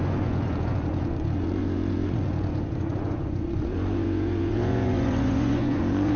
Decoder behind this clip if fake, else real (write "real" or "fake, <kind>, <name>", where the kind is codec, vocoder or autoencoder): fake, vocoder, Vocos